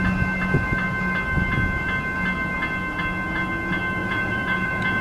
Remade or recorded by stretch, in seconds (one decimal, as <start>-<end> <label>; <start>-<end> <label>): 0.0-4.0 recorded; 4.0-5.0 remade